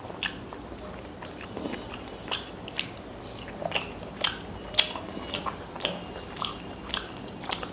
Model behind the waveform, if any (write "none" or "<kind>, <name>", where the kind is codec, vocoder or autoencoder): none